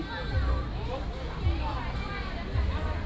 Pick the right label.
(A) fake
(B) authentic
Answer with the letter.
B